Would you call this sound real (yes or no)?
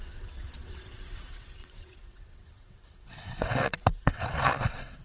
no